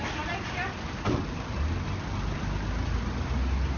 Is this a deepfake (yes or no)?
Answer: no